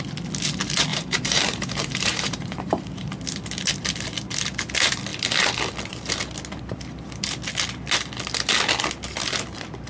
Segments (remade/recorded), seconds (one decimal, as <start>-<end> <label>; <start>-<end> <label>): 0.0-0.9 recorded; 0.9-3.1 remade; 3.1-9.9 recorded